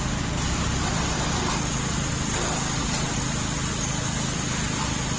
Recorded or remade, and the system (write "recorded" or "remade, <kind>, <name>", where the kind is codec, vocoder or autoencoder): recorded